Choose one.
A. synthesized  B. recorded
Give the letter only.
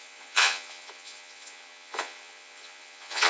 A